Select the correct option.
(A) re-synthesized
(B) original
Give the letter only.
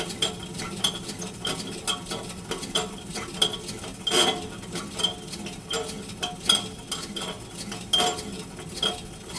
B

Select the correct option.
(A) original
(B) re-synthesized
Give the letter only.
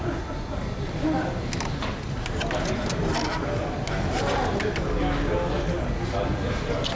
A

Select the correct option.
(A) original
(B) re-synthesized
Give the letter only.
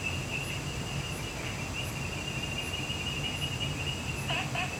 A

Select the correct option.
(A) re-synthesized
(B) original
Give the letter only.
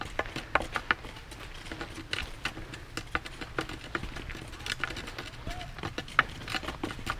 B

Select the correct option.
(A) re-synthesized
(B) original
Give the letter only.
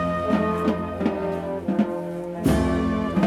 B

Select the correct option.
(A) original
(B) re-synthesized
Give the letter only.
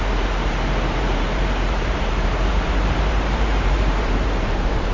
B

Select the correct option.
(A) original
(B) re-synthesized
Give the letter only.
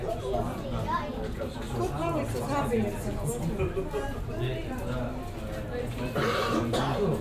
A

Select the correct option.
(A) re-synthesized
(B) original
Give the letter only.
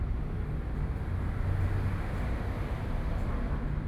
B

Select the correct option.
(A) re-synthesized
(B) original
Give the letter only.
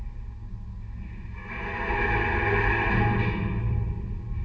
B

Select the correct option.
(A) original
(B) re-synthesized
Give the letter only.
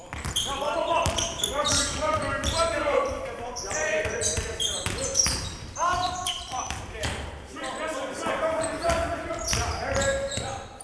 B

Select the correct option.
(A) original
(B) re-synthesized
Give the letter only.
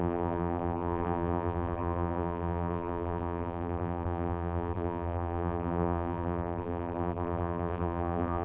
B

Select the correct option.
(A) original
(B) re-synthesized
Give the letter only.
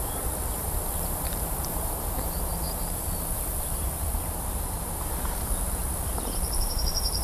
B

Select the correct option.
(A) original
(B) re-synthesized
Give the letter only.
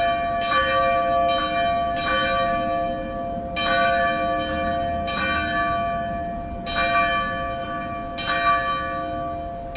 A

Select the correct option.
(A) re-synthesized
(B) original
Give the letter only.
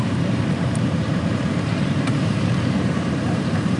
A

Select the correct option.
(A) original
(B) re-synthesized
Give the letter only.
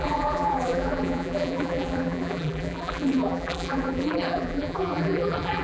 B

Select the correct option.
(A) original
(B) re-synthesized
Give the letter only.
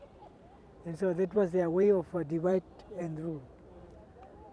B